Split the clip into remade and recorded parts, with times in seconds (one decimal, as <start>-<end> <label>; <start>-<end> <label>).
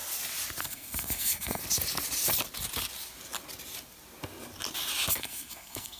0.0-0.6 recorded; 0.6-1.6 remade; 1.6-5.1 recorded; 5.1-6.0 remade